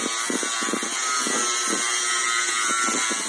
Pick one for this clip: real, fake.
real